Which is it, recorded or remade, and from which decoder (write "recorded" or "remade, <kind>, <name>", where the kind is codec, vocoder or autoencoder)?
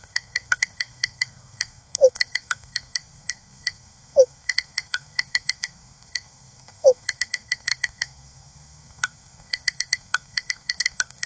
remade, codec, SNAC